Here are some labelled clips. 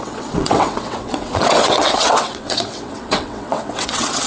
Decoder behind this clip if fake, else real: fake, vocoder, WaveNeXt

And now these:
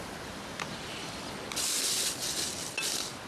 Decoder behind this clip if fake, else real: real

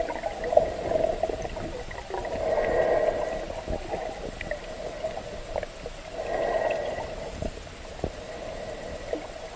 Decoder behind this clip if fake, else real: real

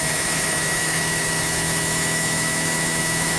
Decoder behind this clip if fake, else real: fake, autoencoder, DAC-VAE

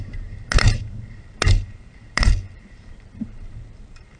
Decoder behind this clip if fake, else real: fake, vocoder, BigVGAN v2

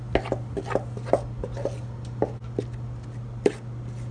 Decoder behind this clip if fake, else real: real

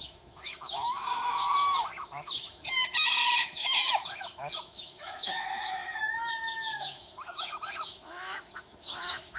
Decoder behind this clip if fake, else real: fake, autoencoder, DAC-VAE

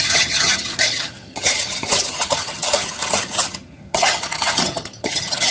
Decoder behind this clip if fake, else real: fake, vocoder, HiFi-GAN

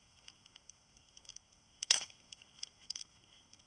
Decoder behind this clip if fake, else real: fake, codec, SNAC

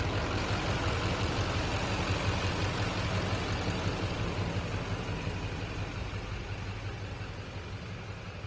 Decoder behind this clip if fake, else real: real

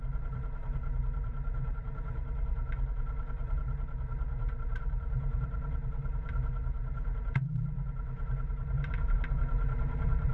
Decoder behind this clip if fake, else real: fake, vocoder, BigVGAN v2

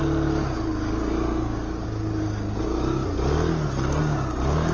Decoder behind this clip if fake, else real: real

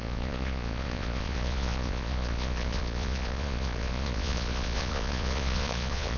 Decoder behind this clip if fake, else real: fake, vocoder, Vocos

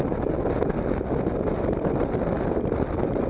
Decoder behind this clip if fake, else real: real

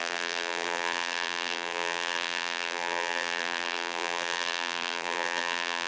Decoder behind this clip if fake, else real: fake, vocoder, BigVGAN v2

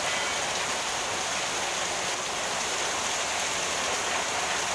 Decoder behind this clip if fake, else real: real